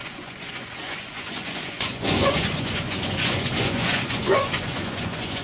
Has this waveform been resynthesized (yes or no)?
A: yes